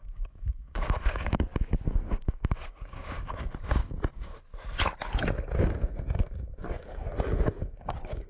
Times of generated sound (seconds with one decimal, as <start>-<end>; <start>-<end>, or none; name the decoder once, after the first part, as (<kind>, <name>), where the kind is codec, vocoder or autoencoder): 0.0-4.3 (codec, DAC); 5.6-8.3